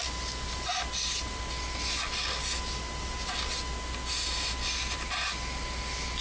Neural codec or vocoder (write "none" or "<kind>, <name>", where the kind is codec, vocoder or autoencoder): none